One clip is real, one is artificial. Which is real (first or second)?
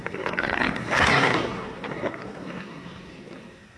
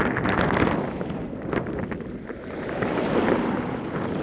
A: second